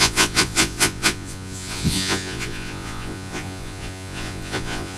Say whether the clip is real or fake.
fake